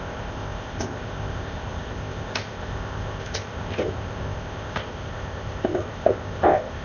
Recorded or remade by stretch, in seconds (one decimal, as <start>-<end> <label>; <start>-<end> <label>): 0.0-6.8 remade

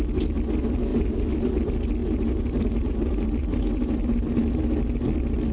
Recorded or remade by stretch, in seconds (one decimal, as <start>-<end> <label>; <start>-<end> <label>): 0.0-0.9 recorded; 0.9-1.5 remade; 1.5-2.0 recorded; 2.0-4.7 remade; 4.7-5.5 recorded

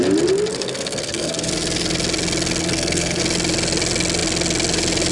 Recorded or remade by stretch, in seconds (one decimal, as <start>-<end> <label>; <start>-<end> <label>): 0.0-0.5 recorded; 0.5-1.5 remade; 1.5-2.6 recorded; 2.6-3.2 remade; 3.2-5.1 recorded

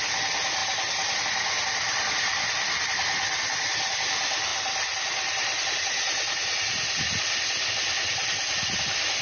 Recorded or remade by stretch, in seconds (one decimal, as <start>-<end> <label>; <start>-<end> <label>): 0.0-0.6 recorded; 0.6-1.2 remade; 1.2-9.2 recorded

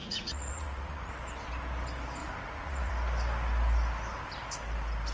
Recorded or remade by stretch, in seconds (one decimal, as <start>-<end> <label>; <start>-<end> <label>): 0.0-1.1 remade; 1.1-2.2 recorded; 2.2-2.9 remade; 2.9-5.1 recorded

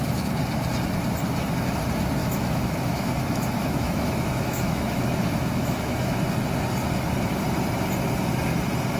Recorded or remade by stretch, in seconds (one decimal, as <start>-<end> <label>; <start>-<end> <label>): 0.0-2.2 recorded; 2.2-6.2 remade; 6.2-9.0 recorded

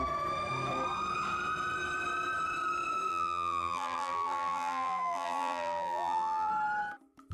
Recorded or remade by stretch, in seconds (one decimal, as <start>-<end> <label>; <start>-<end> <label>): 0.0-3.1 recorded; 3.1-6.5 remade; 6.5-7.3 recorded

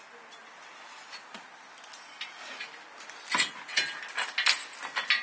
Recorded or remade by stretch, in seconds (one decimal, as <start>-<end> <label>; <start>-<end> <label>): 0.0-5.2 recorded